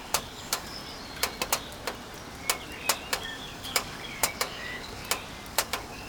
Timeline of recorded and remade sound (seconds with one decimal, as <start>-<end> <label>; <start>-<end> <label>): 0.0-0.8 remade; 0.8-3.1 recorded; 3.1-5.0 remade; 5.0-5.5 recorded; 5.5-6.1 remade